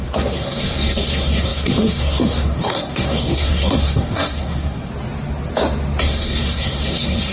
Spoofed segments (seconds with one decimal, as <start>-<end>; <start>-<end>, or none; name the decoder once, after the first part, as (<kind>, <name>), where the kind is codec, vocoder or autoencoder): 0.0-4.9 (codec, SNAC); 6.0-7.3